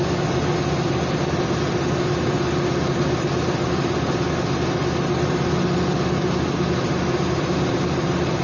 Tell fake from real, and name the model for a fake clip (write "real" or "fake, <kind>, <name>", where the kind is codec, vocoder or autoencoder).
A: real